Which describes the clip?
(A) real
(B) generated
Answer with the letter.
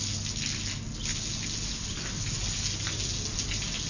A